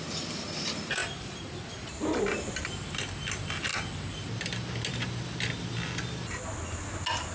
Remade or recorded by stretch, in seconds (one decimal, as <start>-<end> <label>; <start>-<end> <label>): 0.0-7.3 recorded